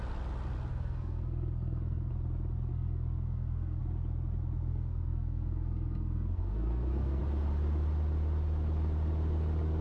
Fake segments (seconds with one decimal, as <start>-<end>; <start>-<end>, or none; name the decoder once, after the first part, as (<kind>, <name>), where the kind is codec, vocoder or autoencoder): 0.7-2.1 (codec, SNAC); 2.7-3.8; 4.7-7.2